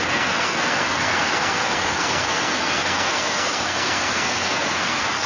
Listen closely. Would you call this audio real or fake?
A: fake